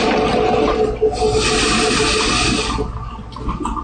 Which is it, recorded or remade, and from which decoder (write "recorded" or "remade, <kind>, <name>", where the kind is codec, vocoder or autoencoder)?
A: recorded